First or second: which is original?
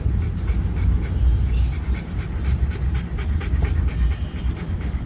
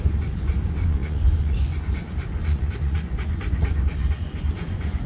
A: first